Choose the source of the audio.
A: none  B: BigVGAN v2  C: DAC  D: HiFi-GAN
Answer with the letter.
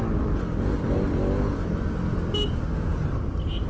A